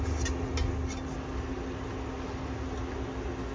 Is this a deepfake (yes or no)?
no